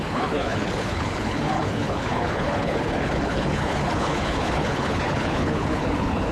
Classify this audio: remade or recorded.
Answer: remade